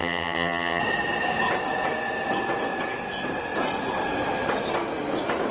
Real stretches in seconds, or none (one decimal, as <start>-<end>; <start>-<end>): 0.8-5.5